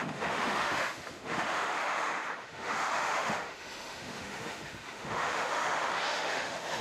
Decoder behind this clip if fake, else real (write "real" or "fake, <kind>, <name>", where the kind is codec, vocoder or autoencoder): fake, autoencoder, DAC-VAE